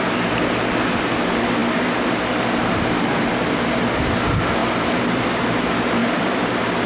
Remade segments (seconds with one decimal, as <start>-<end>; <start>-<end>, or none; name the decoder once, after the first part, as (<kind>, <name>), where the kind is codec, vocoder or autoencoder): 1.6-2.8 (vocoder, BigVGAN v2); 4.6-5.4; 6.0-6.9

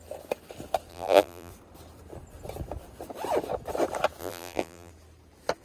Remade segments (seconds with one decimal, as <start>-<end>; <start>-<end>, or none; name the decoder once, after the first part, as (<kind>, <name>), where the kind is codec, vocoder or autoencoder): 0.9-1.5 (vocoder, BigVGAN v2); 4.2-4.9